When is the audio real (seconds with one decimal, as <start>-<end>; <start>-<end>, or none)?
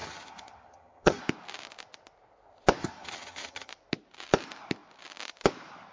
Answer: 1.2-2.8; 3.7-5.9